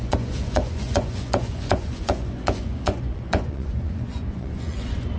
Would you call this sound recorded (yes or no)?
no